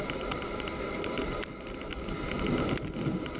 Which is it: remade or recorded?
recorded